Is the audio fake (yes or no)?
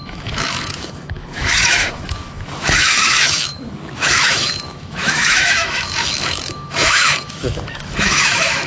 yes